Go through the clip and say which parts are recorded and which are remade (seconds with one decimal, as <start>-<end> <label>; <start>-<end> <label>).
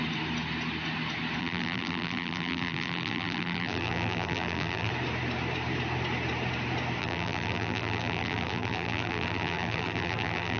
0.0-1.4 recorded; 1.4-4.9 remade; 4.9-7.0 recorded; 7.0-10.6 remade